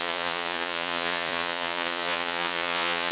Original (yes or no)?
no